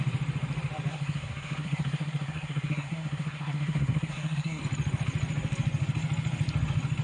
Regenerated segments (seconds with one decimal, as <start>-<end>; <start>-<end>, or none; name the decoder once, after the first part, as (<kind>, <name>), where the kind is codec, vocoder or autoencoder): 0.9-4.6 (codec, SNAC)